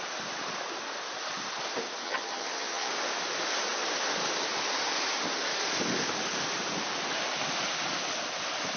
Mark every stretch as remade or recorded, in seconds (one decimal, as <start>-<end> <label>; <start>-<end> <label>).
0.0-2.0 recorded; 2.0-2.9 remade; 2.9-8.8 recorded